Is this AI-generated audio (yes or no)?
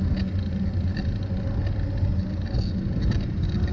no